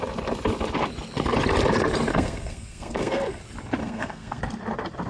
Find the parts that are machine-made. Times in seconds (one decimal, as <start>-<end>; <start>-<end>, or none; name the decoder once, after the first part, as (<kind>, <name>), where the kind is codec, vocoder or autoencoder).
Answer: 2.1-3.4 (codec, SNAC); 3.8-4.4